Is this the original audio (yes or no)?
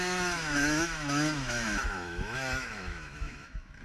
no